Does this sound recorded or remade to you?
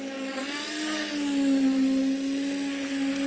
recorded